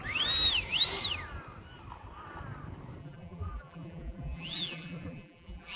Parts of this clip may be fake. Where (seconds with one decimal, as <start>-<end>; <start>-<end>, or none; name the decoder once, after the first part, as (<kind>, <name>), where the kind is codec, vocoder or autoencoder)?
3.0-5.8 (vocoder, BigVGAN v2)